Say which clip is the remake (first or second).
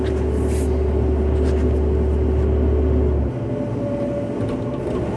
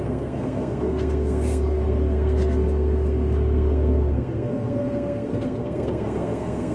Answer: second